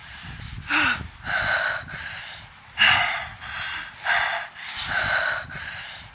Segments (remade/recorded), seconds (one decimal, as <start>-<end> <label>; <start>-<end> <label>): 0.0-6.1 recorded